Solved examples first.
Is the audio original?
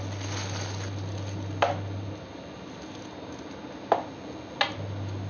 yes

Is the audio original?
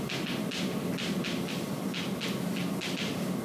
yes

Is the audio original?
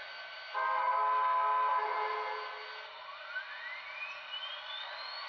yes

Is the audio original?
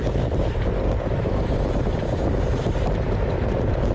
no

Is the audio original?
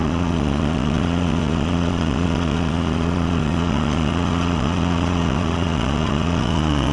no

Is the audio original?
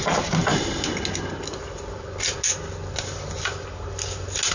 yes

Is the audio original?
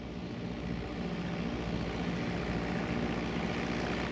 yes